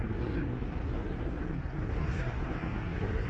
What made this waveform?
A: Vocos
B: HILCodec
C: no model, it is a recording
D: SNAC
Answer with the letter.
D